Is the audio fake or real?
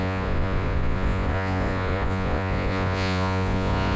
fake